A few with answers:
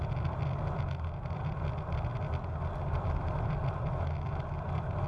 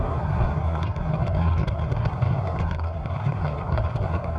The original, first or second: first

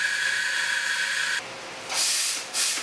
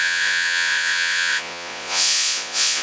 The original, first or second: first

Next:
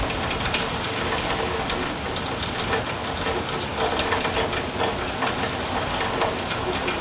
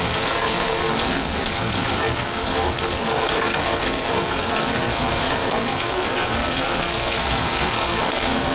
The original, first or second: first